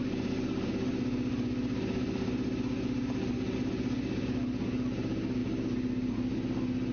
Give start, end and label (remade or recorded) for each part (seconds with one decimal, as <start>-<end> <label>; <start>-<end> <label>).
0.0-6.9 recorded